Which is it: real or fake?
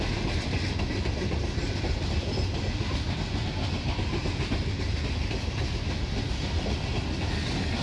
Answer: real